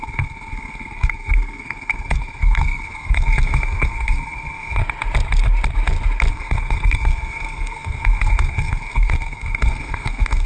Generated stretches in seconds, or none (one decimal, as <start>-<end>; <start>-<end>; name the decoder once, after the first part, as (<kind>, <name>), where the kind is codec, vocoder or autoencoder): 0.0-4.8 (codec, SNAC); 6.3-10.5